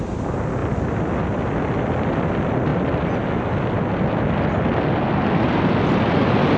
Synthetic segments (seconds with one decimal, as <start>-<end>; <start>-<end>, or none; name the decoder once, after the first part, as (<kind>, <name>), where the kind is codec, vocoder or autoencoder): none